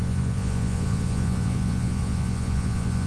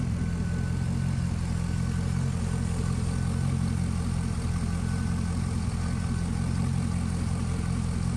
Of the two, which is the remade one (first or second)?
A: first